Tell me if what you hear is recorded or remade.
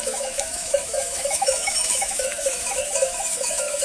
remade